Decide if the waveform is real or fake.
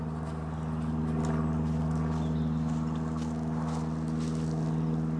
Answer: real